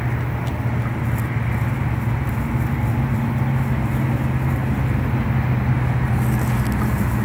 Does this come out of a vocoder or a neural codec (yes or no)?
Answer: no